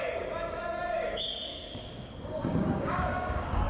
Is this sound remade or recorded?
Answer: remade